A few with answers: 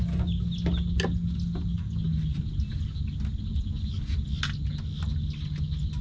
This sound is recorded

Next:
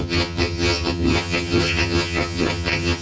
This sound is remade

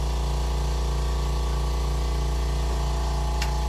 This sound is recorded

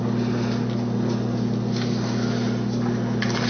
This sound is recorded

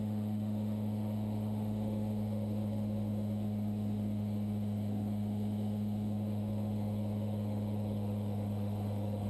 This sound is remade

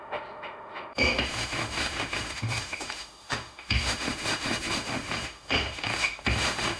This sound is remade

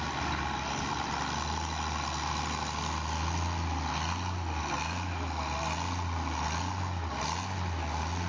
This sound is recorded